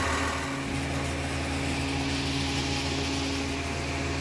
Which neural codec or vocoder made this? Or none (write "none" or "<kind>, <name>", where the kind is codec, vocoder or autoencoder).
none